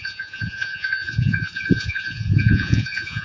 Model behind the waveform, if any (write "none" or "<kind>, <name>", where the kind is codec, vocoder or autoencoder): vocoder, Vocos